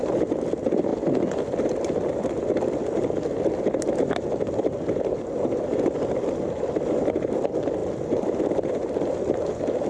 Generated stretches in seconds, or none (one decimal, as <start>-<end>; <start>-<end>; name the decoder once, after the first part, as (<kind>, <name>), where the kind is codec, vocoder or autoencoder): none